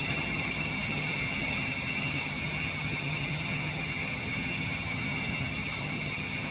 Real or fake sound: fake